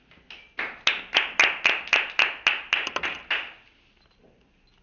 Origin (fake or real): real